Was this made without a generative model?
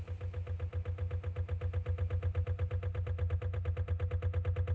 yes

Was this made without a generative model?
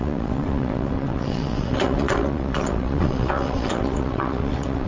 no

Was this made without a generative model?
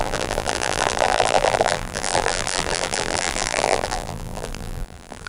no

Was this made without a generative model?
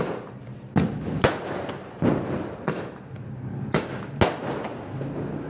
yes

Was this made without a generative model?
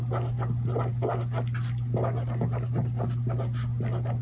yes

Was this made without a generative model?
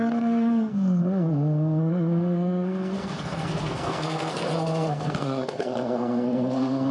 no